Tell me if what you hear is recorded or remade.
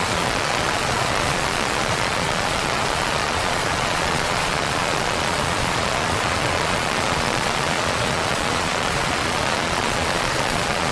remade